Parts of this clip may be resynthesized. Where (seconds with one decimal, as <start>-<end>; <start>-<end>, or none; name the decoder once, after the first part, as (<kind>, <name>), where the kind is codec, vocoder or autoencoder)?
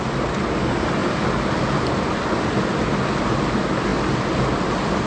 none